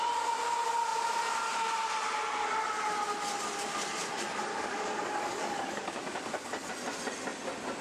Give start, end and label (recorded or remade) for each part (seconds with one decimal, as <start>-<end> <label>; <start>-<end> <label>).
0.0-4.5 recorded; 4.5-6.7 remade; 6.7-7.8 recorded